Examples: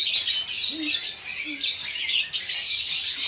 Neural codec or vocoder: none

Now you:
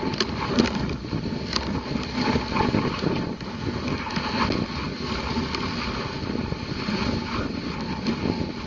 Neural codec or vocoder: none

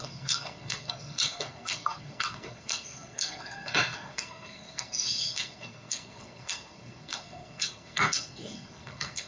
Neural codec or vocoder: codec, SNAC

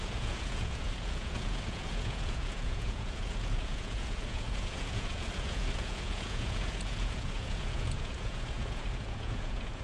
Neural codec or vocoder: vocoder, Vocos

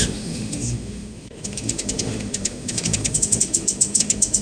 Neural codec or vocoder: autoencoder, DAC-VAE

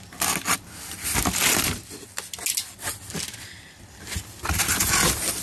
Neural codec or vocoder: none